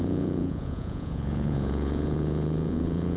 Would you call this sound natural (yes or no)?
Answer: no